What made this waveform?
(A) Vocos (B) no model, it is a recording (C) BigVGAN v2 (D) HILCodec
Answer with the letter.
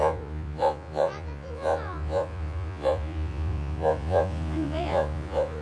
A